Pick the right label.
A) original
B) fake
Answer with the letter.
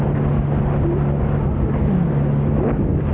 A